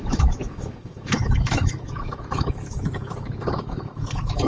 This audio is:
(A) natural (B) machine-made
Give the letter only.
B